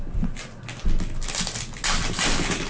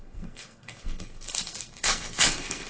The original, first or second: first